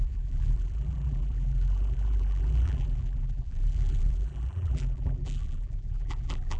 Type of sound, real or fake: fake